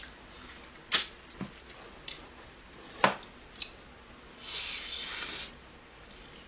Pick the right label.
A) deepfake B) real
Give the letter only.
B